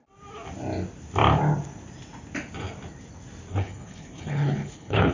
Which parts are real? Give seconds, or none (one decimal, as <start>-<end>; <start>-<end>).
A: 0.0-3.5